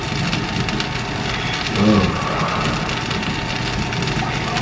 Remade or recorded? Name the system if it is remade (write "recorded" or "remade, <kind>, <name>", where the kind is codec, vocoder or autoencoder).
recorded